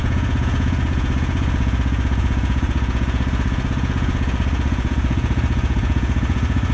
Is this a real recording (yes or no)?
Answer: no